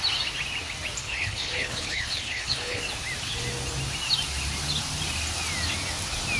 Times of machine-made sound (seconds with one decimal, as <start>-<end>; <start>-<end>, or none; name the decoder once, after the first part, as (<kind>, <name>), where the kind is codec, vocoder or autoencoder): 1.0-2.8 (codec, HILCodec)